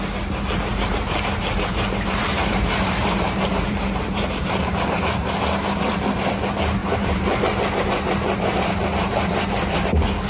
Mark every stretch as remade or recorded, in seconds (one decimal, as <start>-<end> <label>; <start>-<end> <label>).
0.0-0.7 recorded; 0.7-4.7 remade; 4.7-6.8 recorded; 6.8-7.6 remade; 7.6-10.3 recorded